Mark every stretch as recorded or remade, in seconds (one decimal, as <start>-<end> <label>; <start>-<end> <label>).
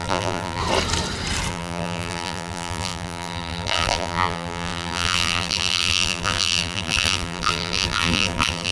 0.0-0.6 remade; 0.6-1.5 recorded; 1.5-8.7 remade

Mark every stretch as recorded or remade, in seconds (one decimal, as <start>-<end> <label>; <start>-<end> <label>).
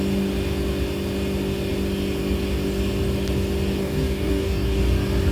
0.0-3.8 recorded; 3.8-4.8 remade; 4.8-5.3 recorded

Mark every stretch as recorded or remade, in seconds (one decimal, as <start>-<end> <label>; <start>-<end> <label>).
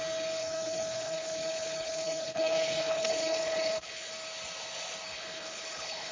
0.0-0.4 recorded; 0.4-4.1 remade; 4.1-5.1 recorded; 5.1-6.1 remade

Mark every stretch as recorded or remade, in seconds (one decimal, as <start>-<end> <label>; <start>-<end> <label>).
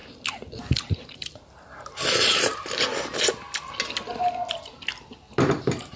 0.0-0.9 recorded; 0.9-2.9 remade; 2.9-5.5 recorded; 5.5-6.0 remade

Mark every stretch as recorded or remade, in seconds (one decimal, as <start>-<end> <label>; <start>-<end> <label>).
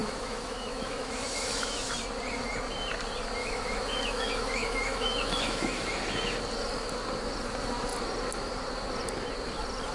0.0-1.9 remade; 1.9-3.4 recorded; 3.4-5.9 remade; 5.9-9.9 recorded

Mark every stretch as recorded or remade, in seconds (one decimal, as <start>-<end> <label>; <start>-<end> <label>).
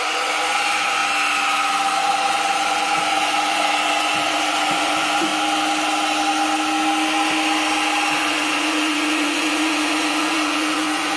0.0-1.0 remade; 1.0-1.9 recorded; 1.9-5.3 remade; 5.3-8.1 recorded; 8.1-11.2 remade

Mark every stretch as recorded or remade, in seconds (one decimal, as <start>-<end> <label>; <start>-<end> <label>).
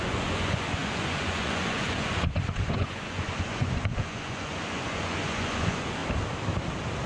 0.0-6.0 remade; 6.0-7.1 recorded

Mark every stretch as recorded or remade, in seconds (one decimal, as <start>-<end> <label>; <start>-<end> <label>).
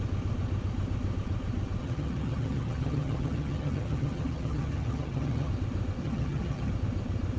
0.0-1.8 recorded; 1.8-5.5 remade; 5.5-6.0 recorded; 6.0-6.7 remade; 6.7-7.4 recorded